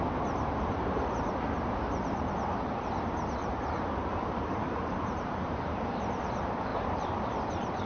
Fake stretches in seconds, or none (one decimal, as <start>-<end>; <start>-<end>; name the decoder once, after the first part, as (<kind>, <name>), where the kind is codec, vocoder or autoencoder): 3.4-6.0 (vocoder, BigVGAN v2); 6.7-7.4